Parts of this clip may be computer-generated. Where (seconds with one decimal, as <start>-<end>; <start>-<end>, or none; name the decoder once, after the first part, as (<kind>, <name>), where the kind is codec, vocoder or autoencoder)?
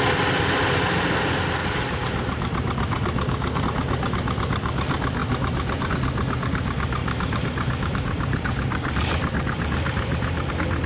1.6-3.6 (vocoder, BigVGAN v2); 7.0-10.5